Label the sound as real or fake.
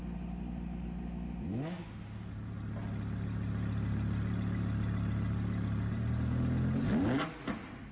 real